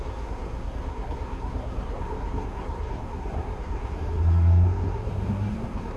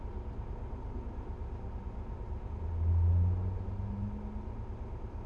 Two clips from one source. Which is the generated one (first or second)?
first